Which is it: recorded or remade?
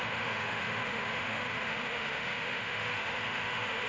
remade